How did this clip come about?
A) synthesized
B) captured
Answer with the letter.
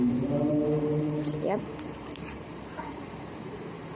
A